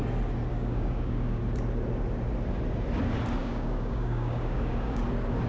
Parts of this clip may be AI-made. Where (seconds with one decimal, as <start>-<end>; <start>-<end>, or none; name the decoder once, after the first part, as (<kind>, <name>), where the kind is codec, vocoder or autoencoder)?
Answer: 0.5-1.4 (codec, DAC); 3.4-5.0